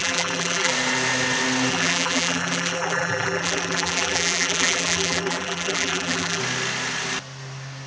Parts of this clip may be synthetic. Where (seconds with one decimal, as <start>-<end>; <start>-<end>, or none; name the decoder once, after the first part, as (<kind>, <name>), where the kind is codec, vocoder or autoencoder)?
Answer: 0.0-0.7 (vocoder, BigVGAN v2); 1.7-6.4